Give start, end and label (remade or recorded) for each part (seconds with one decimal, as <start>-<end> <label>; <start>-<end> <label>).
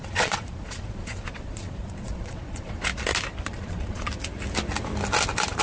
0.0-2.9 remade; 2.9-3.4 recorded; 3.4-4.1 remade; 4.1-5.6 recorded